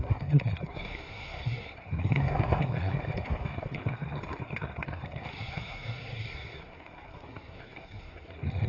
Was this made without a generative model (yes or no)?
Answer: no